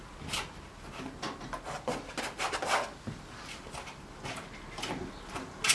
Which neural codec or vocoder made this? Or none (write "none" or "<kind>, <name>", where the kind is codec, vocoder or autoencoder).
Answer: none